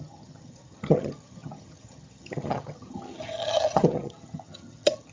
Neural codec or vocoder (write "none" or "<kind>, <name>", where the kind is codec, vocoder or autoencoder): vocoder, HiFi-GAN